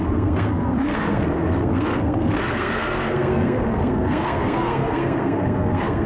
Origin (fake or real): fake